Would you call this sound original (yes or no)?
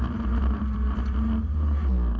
yes